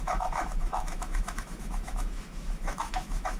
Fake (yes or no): yes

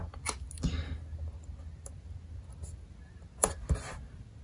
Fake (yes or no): no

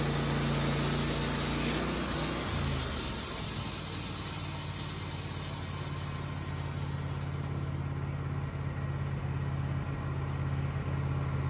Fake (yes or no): no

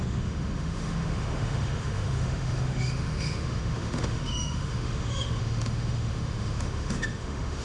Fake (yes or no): yes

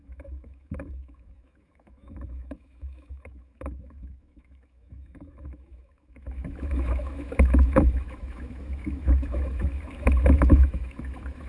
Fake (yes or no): yes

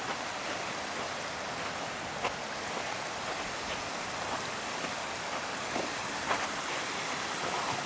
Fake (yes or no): no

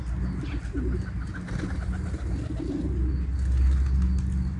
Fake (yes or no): no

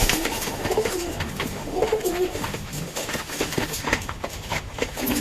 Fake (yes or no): yes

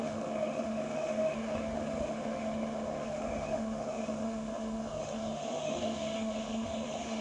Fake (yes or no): yes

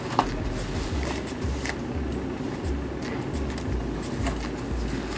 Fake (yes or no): no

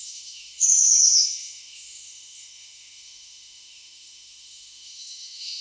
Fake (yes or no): yes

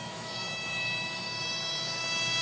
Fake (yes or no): yes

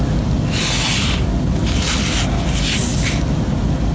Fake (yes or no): no